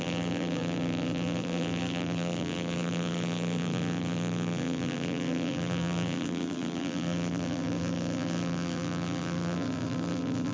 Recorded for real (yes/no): no